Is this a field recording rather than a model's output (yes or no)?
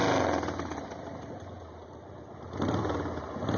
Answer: yes